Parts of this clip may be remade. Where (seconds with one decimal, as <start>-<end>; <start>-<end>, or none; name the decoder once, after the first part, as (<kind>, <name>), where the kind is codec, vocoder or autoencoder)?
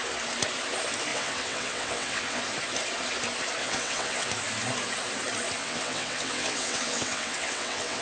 1.1-2.4 (vocoder, WaveNeXt); 3.6-4.3; 5.6-8.0